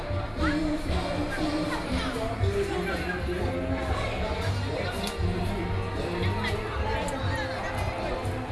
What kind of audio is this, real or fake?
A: real